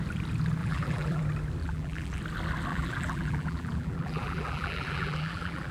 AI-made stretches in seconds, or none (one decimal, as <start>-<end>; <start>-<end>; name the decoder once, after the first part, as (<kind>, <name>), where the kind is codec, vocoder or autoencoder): 0.6-1.2 (vocoder, BigVGAN v2); 1.6-2.2; 2.7-5.7